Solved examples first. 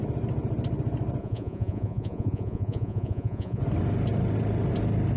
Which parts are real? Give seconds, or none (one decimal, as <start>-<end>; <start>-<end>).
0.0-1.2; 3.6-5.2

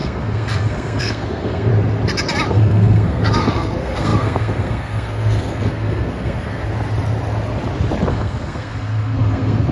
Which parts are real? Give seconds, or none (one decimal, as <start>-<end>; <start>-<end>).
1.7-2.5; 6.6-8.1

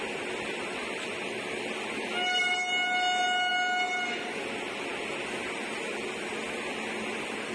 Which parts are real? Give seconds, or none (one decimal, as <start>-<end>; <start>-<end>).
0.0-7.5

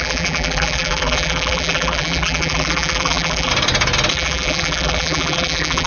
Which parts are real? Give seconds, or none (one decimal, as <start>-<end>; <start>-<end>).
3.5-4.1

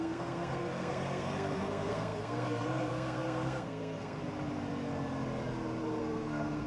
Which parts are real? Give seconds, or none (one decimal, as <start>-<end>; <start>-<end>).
4.2-6.0